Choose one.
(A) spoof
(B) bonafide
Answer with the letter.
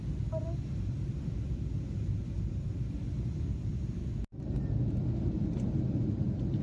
B